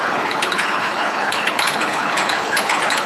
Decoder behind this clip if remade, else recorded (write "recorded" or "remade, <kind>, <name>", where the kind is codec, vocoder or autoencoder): remade, codec, HILCodec